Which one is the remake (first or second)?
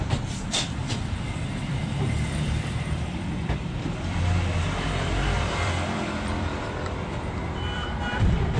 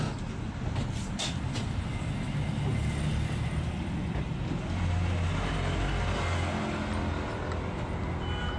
first